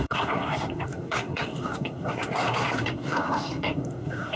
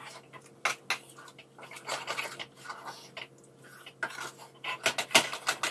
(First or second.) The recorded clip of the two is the second